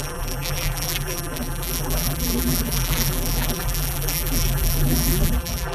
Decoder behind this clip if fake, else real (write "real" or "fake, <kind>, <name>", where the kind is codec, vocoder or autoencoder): fake, vocoder, BigVGAN v2